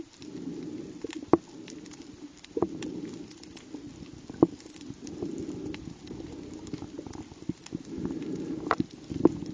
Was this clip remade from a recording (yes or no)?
no